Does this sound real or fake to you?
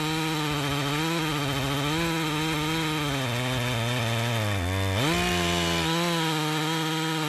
real